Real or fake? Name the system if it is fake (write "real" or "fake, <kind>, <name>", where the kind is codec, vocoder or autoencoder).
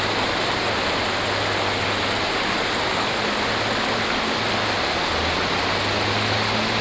real